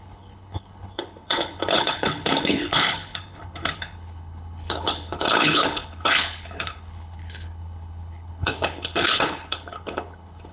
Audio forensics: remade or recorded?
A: remade